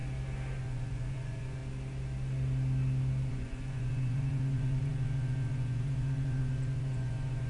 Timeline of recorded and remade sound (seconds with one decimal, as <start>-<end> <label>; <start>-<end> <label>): 0.0-0.6 recorded; 0.6-1.6 remade; 1.6-3.3 recorded; 3.3-7.5 remade